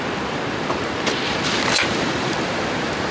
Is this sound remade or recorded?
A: remade